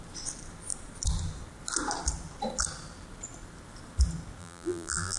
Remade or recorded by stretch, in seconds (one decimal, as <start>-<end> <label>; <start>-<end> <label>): 0.0-4.4 recorded; 4.4-5.2 remade